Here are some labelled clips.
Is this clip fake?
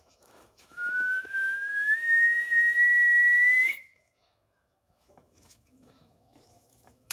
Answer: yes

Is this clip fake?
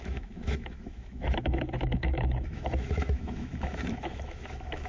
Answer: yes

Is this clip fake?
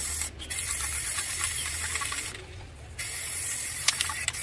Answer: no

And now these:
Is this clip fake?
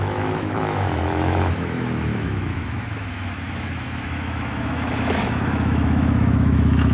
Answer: yes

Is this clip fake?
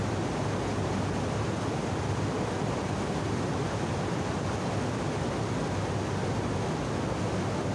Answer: no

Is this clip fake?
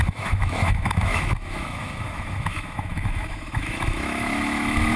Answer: yes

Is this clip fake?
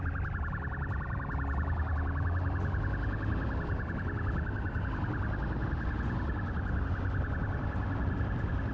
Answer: no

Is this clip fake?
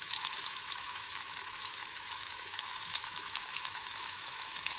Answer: yes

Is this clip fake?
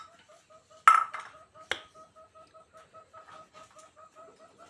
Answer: no